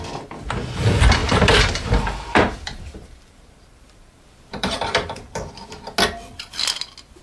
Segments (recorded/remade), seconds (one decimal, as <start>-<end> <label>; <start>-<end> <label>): 0.0-1.2 recorded; 1.2-5.5 remade; 5.5-7.2 recorded